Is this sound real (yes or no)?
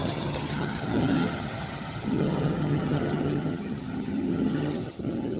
no